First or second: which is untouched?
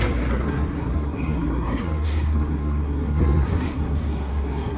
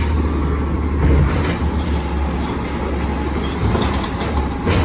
second